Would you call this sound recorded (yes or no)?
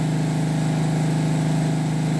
yes